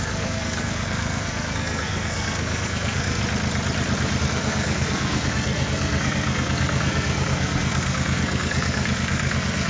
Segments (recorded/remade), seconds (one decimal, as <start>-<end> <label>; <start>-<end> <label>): 0.0-3.2 remade; 3.2-4.2 recorded; 4.2-9.7 remade